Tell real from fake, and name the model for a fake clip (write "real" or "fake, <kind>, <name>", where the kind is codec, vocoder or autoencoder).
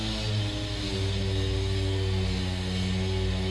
real